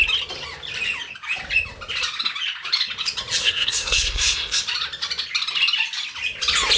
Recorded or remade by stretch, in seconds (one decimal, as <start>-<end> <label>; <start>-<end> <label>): 0.0-3.4 recorded; 3.4-4.6 remade; 4.6-6.8 recorded